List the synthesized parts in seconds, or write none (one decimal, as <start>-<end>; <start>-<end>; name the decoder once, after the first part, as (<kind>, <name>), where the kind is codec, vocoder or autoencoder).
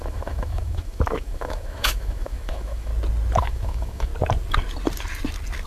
0.0-2.9 (autoencoder, DAC-VAE); 3.4-4.1